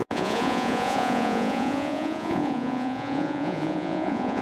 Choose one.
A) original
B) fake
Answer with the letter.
B